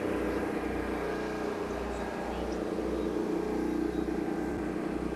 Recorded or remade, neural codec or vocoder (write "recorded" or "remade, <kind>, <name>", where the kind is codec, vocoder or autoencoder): recorded